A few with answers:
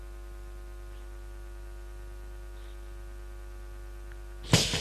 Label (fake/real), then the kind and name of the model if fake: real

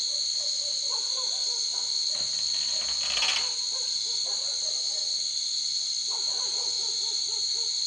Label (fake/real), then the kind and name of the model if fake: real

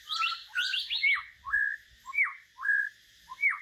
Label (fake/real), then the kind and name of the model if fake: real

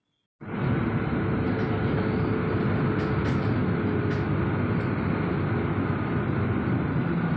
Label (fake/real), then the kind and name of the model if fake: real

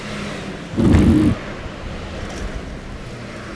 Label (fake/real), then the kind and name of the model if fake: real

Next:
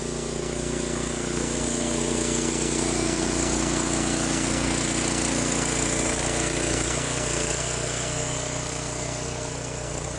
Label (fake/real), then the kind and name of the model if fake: fake, codec, SNAC